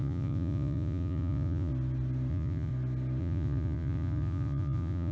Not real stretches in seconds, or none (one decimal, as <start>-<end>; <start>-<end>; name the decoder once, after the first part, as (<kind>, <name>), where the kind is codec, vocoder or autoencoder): 0.0-1.7 (vocoder, Vocos); 2.3-2.7; 3.2-5.1